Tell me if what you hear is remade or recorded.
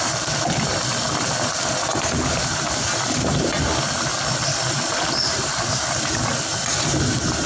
recorded